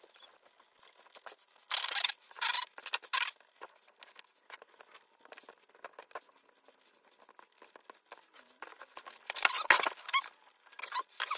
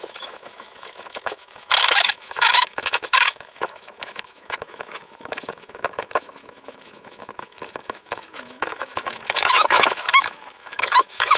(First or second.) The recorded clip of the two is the first